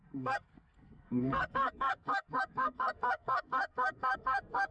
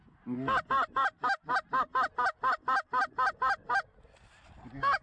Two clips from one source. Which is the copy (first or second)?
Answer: first